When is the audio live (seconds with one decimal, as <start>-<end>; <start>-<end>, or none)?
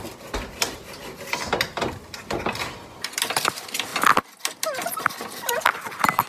0.0-6.3